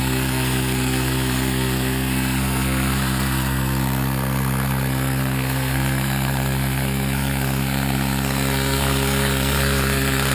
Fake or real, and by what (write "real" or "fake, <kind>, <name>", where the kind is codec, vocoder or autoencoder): fake, codec, SNAC